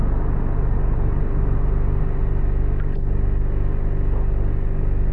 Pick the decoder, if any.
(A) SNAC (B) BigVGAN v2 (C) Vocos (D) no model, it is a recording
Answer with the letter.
D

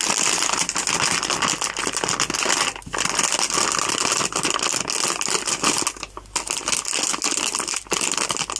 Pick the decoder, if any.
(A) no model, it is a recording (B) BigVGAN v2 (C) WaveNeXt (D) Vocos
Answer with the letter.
A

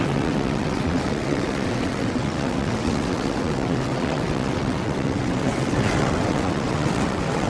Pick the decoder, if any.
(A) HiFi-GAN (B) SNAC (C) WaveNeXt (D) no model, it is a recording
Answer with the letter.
C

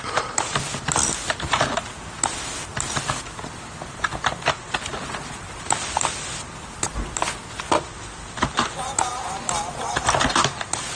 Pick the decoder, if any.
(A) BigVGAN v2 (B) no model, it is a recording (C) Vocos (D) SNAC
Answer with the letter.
B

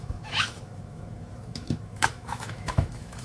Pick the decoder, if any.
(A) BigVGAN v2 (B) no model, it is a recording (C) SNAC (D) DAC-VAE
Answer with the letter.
D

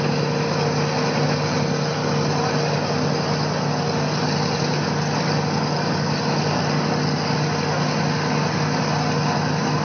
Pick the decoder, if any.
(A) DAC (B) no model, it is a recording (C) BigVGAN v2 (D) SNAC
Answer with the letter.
B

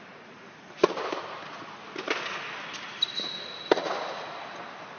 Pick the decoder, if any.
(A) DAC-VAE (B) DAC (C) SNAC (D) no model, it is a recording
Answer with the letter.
D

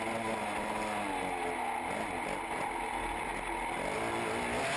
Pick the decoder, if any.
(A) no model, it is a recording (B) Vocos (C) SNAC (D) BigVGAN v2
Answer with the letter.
A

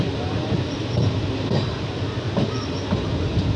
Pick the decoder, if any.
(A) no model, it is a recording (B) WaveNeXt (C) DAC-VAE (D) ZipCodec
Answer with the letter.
A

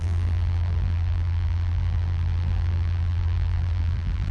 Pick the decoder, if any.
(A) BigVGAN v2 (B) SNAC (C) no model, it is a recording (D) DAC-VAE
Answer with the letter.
A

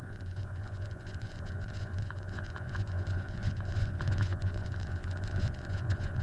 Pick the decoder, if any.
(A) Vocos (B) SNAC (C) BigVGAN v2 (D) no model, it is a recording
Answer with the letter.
A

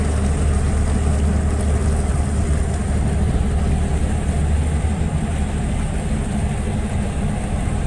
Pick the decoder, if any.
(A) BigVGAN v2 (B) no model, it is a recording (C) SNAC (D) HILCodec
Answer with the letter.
B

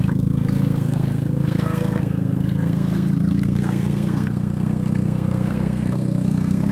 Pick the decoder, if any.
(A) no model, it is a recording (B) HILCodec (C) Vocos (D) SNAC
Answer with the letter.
D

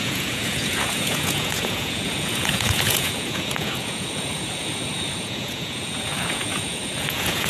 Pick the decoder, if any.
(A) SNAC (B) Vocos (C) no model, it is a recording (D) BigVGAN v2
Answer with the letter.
B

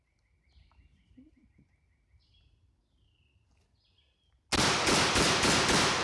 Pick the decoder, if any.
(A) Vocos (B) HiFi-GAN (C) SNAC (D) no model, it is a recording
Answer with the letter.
D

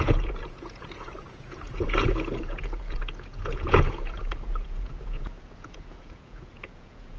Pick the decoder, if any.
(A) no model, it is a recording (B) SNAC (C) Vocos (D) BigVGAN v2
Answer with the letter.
C